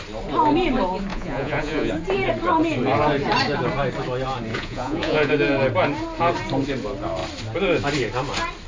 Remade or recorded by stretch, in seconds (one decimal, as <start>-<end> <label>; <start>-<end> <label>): 0.0-1.1 recorded; 1.1-1.9 remade; 1.9-4.5 recorded; 4.5-5.3 remade; 5.3-8.7 recorded